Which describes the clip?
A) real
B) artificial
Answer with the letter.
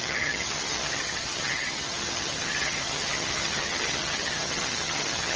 B